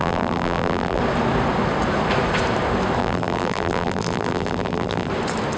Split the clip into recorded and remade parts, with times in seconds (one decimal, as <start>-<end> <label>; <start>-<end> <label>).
0.0-1.0 remade; 1.0-3.0 recorded; 3.0-5.1 remade; 5.1-5.6 recorded